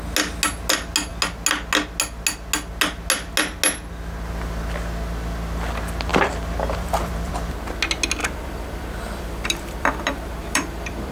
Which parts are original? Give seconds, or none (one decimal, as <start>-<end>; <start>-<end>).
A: 0.0-6.1; 7.3-8.2